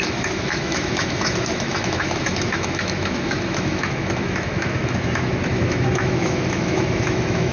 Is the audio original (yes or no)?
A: no